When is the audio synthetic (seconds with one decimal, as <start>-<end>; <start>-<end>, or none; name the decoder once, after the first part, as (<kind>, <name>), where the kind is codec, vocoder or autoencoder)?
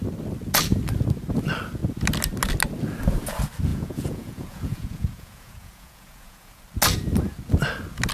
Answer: 3.7-6.6 (vocoder, Vocos)